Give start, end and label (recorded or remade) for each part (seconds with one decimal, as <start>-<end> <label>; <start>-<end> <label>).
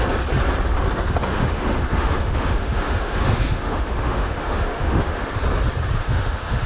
0.0-1.3 recorded; 1.3-5.3 remade; 5.3-6.0 recorded; 6.0-6.7 remade